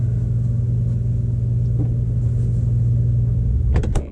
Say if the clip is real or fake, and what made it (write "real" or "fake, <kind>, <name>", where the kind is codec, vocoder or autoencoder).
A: real